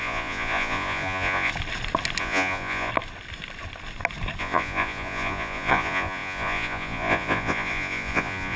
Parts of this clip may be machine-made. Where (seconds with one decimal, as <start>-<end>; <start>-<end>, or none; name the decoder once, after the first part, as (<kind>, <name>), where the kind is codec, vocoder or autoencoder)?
0.0-1.5 (vocoder, Vocos); 2.2-2.9; 4.4-8.6